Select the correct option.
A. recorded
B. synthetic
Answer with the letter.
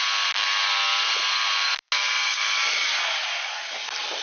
A